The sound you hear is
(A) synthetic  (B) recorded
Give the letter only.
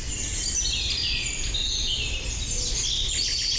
B